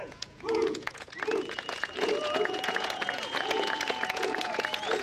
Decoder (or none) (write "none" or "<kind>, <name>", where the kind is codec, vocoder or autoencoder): vocoder, Vocos